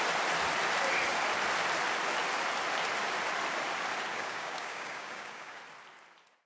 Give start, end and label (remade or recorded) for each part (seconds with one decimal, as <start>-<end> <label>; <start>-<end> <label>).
0.0-4.1 recorded; 4.1-5.6 remade; 5.6-6.5 recorded